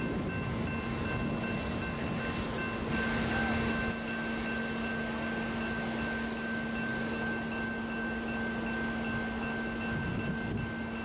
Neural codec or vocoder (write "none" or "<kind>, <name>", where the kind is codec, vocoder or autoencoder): none